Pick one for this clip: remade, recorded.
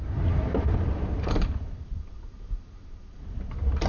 remade